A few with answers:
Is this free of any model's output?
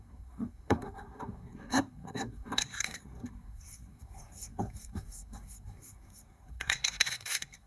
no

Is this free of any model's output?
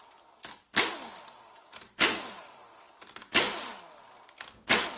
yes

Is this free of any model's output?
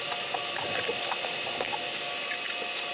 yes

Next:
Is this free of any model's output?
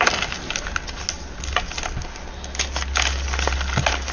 yes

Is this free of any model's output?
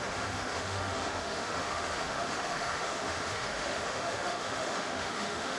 no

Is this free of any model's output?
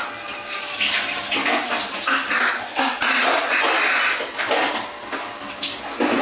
yes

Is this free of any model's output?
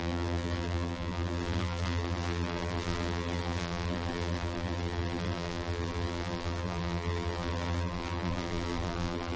no